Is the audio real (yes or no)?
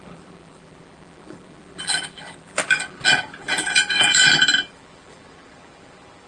no